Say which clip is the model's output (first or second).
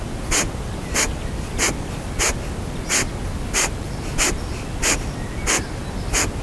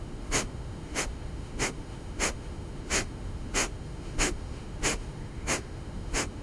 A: second